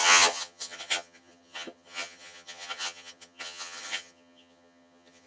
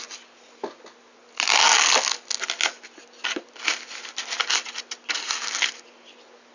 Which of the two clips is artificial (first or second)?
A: first